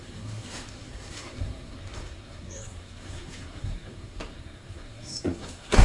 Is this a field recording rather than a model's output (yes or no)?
no